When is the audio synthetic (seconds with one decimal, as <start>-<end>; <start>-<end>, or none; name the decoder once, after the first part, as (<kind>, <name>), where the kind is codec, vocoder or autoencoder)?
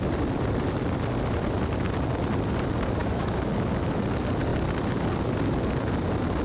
3.0-3.5 (autoencoder, DAC-VAE)